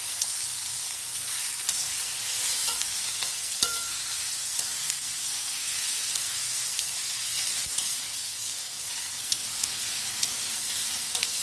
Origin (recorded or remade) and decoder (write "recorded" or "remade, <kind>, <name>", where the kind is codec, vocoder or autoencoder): remade, codec, SNAC